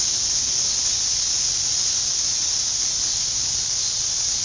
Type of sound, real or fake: real